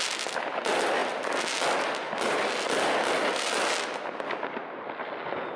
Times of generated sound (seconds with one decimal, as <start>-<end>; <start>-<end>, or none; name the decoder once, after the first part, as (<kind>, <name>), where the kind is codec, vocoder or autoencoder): none